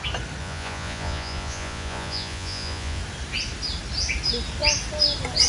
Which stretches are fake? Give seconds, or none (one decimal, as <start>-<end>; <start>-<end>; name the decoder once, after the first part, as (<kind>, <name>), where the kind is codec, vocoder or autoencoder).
0.4-3.0 (vocoder, Vocos)